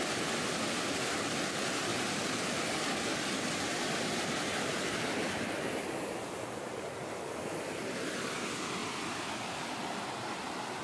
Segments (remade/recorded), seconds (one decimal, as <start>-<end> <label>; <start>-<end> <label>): 0.0-10.8 recorded